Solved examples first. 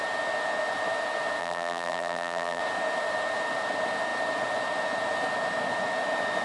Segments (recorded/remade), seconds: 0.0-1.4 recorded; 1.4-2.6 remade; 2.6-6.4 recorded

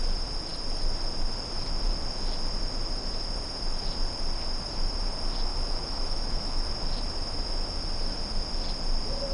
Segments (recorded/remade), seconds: 0.0-5.5 recorded; 5.5-6.7 remade; 6.7-9.3 recorded